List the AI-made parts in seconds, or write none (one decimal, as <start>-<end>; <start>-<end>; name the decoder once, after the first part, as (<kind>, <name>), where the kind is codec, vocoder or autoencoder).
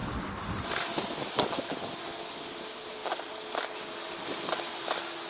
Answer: 0.0-1.1 (vocoder, BigVGAN v2)